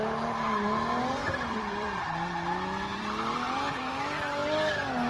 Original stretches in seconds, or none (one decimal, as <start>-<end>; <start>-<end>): 0.0-1.2; 2.0-2.9; 3.8-5.1